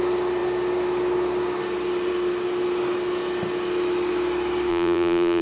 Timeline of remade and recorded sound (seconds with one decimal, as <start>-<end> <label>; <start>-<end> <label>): 0.0-4.7 recorded; 4.7-5.4 remade